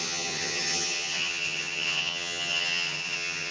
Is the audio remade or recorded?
remade